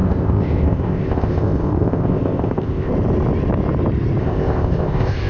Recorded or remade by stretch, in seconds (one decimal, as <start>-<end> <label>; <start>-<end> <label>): 0.0-2.9 remade; 2.9-4.2 recorded; 4.2-5.3 remade